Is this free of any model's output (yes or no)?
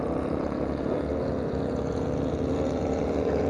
no